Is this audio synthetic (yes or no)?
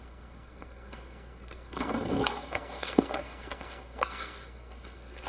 yes